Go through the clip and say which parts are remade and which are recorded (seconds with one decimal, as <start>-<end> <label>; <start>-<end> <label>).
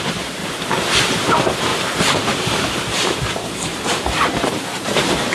0.0-0.4 remade; 0.4-1.0 recorded; 1.0-5.3 remade